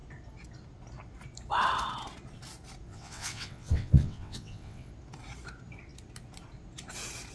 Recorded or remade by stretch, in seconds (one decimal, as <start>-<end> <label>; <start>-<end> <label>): 0.0-2.9 recorded; 2.9-4.9 remade; 4.9-7.3 recorded